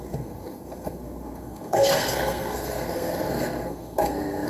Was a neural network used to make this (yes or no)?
yes